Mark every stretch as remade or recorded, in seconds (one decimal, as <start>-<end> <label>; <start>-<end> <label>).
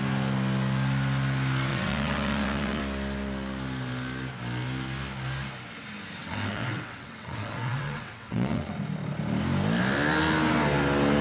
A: 0.0-1.7 recorded; 1.7-2.8 remade; 2.8-6.2 recorded; 6.2-8.7 remade; 8.7-11.2 recorded